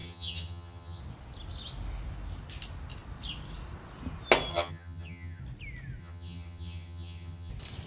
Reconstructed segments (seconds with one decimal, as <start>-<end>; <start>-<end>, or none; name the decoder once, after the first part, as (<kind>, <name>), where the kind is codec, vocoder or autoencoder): 0.0-1.0 (vocoder, HiFi-GAN); 4.5-5.4; 6.0-7.5